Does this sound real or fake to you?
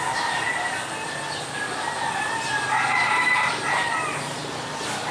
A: real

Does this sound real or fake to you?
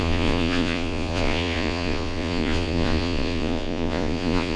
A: fake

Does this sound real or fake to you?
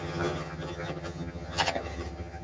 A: fake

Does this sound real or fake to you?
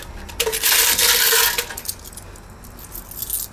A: real